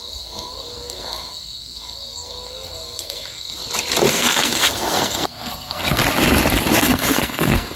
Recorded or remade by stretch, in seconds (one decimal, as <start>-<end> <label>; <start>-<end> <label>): 0.0-3.6 remade; 3.6-4.1 recorded; 4.1-6.0 remade; 6.0-6.8 recorded; 6.8-7.8 remade